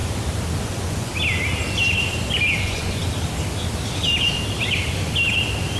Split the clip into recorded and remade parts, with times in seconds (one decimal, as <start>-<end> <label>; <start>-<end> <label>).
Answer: 0.0-0.6 recorded; 0.6-1.1 remade; 1.1-2.6 recorded; 2.6-3.0 remade; 3.0-5.8 recorded